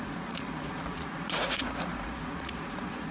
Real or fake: fake